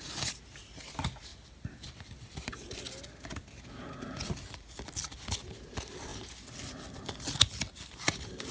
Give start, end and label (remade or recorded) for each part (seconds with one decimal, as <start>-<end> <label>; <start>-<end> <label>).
0.0-1.3 recorded; 1.3-3.0 remade; 3.0-6.1 recorded; 6.1-7.1 remade; 7.1-8.5 recorded